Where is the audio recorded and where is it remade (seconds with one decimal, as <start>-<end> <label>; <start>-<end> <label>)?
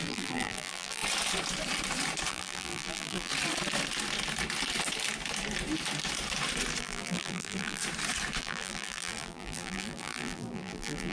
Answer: 0.0-1.0 remade; 1.0-2.3 recorded; 2.3-3.3 remade; 3.3-6.8 recorded; 6.8-7.8 remade; 7.8-8.4 recorded; 8.4-11.1 remade